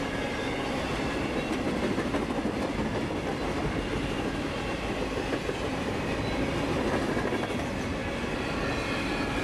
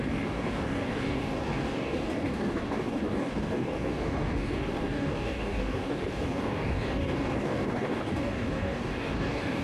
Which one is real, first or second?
first